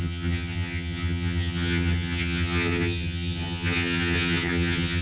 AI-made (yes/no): yes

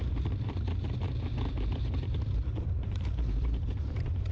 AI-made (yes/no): yes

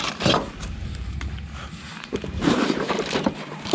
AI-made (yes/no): yes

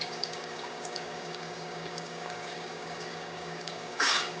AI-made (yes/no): yes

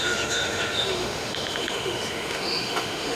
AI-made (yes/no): yes